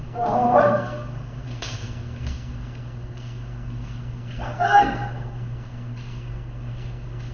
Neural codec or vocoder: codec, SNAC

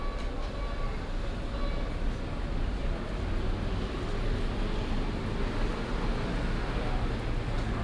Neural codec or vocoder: none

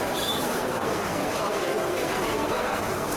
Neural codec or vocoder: codec, SNAC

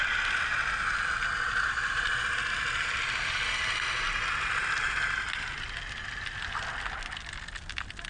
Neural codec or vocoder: none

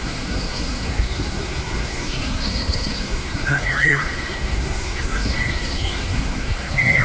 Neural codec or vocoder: codec, SNAC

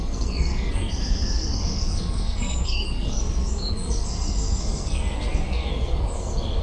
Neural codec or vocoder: codec, SNAC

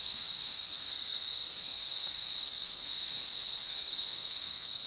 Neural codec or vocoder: codec, SNAC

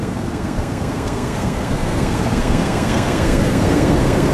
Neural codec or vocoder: codec, SNAC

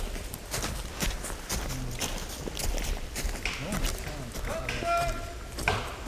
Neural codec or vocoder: none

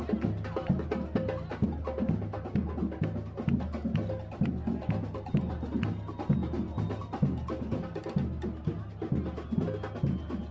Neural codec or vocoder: none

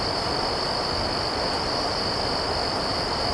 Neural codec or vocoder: none